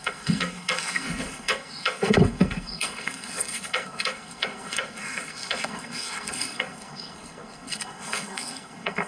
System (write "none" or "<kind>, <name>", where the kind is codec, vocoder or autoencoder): codec, SNAC